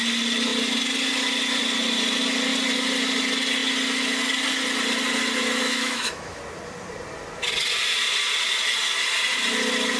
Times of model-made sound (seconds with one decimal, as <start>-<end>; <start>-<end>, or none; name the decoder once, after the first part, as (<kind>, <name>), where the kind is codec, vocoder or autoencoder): 5.6-6.4 (autoencoder, DAC-VAE)